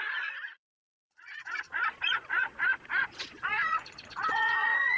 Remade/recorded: remade